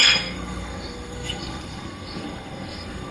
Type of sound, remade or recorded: remade